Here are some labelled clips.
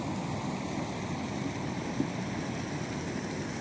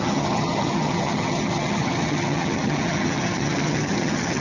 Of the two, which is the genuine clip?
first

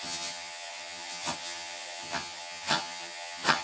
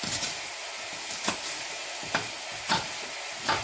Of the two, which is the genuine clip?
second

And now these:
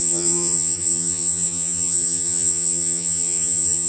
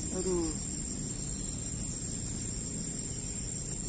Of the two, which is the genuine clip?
second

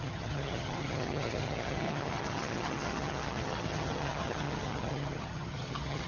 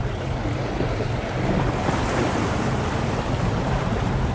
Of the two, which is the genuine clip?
second